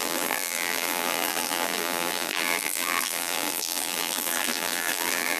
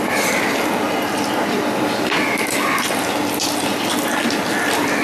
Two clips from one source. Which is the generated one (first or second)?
first